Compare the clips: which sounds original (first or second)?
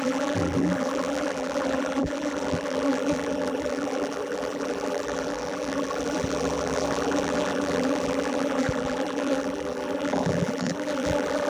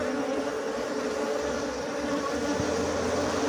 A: second